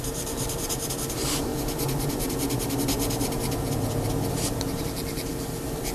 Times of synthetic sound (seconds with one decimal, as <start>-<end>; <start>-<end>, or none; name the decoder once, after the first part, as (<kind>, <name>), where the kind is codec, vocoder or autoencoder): 0.0-1.5 (vocoder, BigVGAN v2); 4.8-5.9